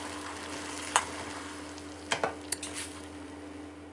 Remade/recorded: recorded